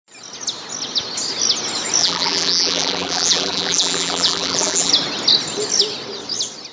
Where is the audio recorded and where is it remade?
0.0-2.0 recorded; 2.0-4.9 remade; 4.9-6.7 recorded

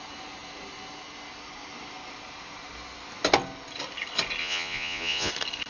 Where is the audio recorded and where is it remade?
0.0-4.4 recorded; 4.4-5.3 remade; 5.3-5.7 recorded

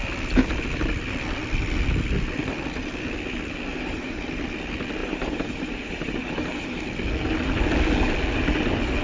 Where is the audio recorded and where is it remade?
0.0-3.7 recorded; 3.7-4.2 remade; 4.2-5.0 recorded; 5.0-6.8 remade; 6.8-9.0 recorded

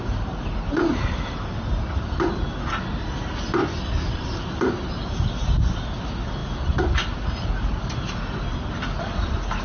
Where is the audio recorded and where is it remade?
0.0-3.6 recorded; 3.6-5.8 remade; 5.8-6.4 recorded; 6.4-9.6 remade